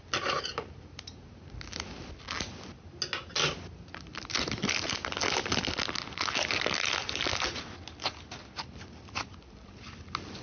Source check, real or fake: real